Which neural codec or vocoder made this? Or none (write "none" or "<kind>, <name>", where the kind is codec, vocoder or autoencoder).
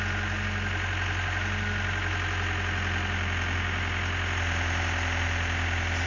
none